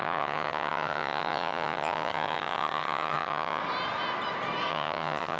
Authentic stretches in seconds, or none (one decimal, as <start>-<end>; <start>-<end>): 3.6-4.7